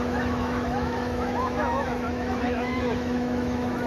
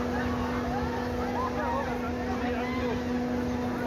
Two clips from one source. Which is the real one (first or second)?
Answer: second